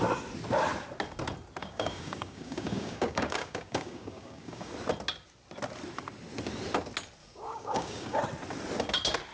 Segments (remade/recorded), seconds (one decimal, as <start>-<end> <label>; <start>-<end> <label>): 0.0-1.6 recorded; 1.6-4.7 remade; 4.7-7.2 recorded; 7.2-8.2 remade; 8.2-9.3 recorded